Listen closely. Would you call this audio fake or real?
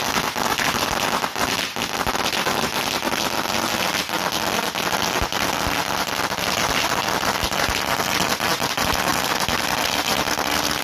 real